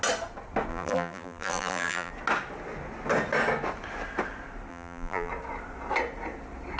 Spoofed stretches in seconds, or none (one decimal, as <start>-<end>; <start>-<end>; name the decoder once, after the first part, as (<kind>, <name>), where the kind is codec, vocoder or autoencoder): 0.7-2.1 (vocoder, BigVGAN v2); 4.7-5.3